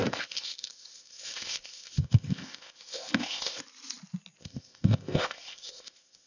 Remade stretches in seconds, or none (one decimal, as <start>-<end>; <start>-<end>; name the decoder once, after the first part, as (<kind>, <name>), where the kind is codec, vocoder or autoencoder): 0.0-3.6 (codec, ZipCodec); 4.4-6.3